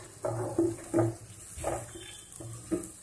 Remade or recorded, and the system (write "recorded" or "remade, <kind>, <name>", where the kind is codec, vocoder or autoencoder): recorded